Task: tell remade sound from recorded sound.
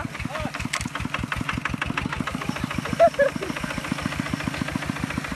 recorded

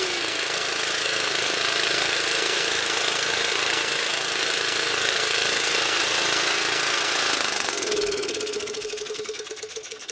remade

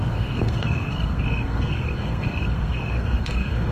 remade